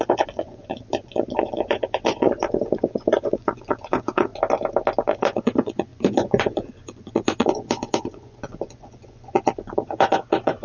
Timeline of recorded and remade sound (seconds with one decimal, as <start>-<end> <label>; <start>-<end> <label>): 0.0-4.3 remade; 4.3-5.0 recorded; 5.0-10.6 remade